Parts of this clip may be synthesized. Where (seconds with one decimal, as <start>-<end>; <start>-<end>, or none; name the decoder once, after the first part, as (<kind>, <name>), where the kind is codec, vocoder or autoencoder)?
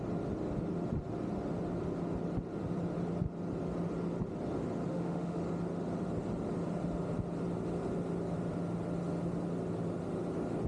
4.9-5.4 (autoencoder, DAC-VAE)